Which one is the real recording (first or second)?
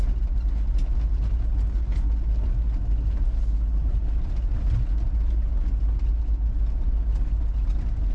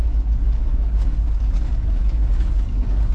first